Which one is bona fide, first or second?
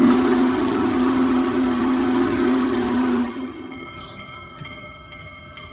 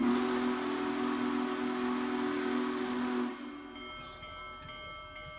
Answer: second